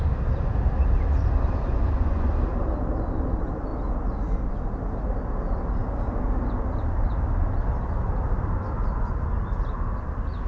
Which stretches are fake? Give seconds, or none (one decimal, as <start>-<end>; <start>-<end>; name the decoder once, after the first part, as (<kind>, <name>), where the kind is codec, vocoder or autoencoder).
1.7-2.3 (vocoder, Vocos)